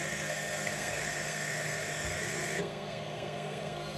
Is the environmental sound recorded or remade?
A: remade